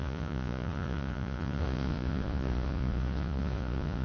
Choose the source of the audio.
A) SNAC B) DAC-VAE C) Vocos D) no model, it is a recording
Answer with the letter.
C